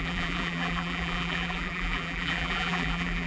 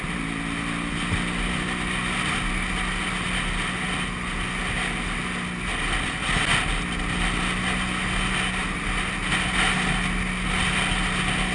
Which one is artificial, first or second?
first